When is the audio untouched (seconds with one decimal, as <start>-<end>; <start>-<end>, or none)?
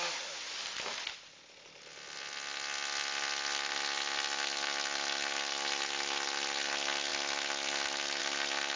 0.0-8.8